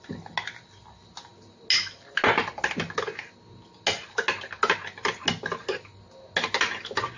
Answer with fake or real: real